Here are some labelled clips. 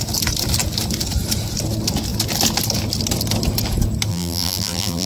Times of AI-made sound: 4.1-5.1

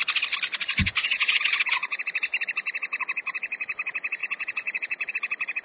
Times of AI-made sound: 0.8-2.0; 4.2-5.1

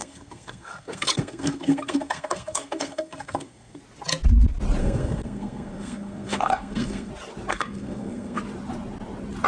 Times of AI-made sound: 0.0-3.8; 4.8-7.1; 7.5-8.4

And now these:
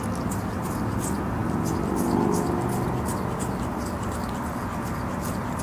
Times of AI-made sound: none